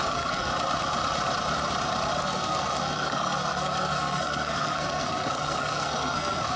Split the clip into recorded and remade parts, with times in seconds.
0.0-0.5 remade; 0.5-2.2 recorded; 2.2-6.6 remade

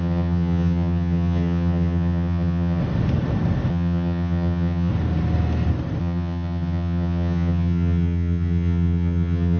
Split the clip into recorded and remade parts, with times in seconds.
0.0-2.8 remade; 2.8-3.7 recorded; 3.7-4.9 remade; 4.9-6.0 recorded; 6.0-9.6 remade

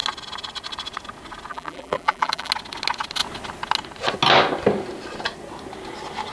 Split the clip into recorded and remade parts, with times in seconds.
0.0-1.5 recorded; 1.5-2.5 remade; 2.5-6.3 recorded

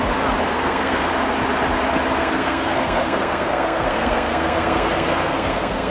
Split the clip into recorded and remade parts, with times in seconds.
0.0-0.5 recorded; 0.5-1.1 remade; 1.1-2.2 recorded; 2.2-5.9 remade

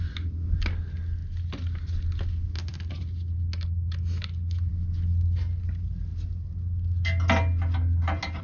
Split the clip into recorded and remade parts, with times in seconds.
0.0-8.4 recorded

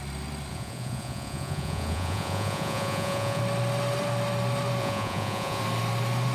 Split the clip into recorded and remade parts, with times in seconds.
0.0-0.5 recorded; 0.5-3.4 remade; 3.4-4.8 recorded; 4.8-5.6 remade; 5.6-6.3 recorded

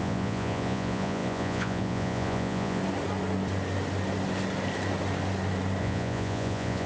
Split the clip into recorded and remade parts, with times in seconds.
0.0-2.8 remade; 2.8-5.8 recorded; 5.8-6.9 remade

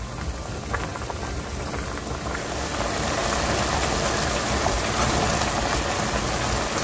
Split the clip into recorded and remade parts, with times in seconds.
0.0-6.8 recorded